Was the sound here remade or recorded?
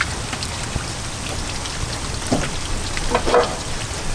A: recorded